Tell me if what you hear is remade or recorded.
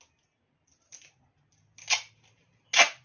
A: recorded